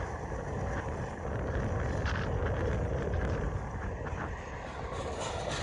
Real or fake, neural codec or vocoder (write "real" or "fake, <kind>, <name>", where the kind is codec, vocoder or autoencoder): real